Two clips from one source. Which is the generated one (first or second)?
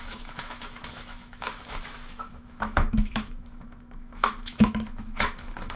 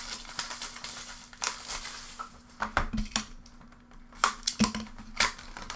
first